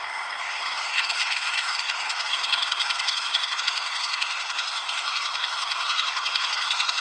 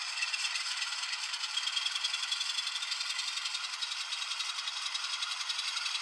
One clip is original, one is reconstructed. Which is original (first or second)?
second